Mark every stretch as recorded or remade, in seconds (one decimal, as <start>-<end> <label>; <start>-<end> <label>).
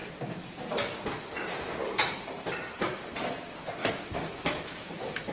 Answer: 0.0-3.8 recorded; 3.8-5.3 remade